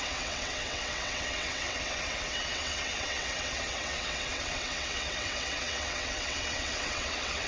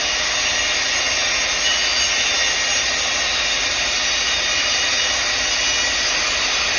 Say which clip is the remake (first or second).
first